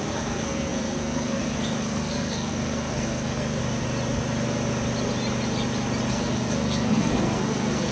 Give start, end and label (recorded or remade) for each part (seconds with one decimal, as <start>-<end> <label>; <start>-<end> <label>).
0.0-3.6 remade; 3.6-6.1 recorded; 6.1-7.9 remade